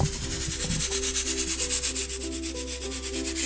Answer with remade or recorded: recorded